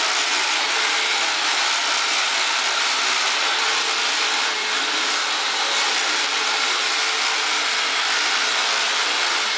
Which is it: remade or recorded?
recorded